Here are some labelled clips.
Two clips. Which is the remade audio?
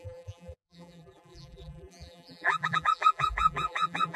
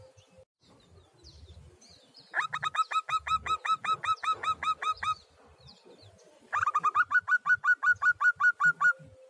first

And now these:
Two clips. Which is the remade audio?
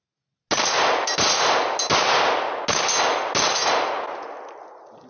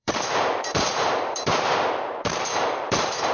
second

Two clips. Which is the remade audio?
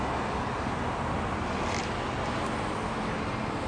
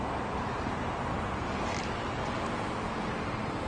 second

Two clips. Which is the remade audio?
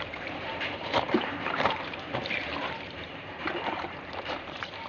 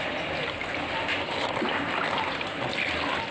first